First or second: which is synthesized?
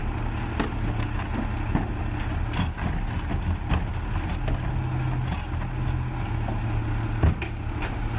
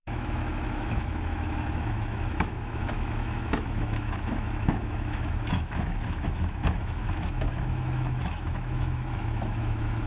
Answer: second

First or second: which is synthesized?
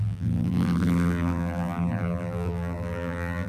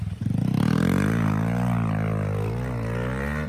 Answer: first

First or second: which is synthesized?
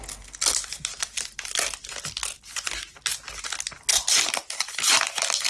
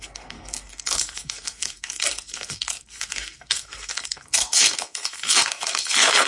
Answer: second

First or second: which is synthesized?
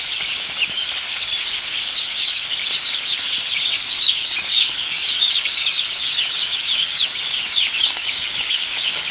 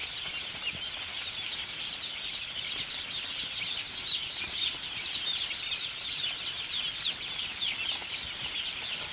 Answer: first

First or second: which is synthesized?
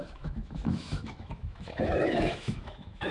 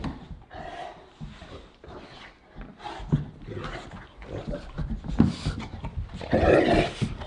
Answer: first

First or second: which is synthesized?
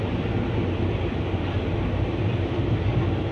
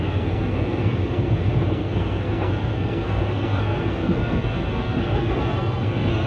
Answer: second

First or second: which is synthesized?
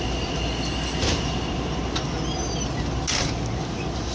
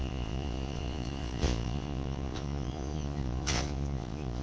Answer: second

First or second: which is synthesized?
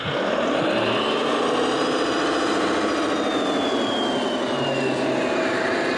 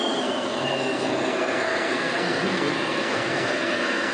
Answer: second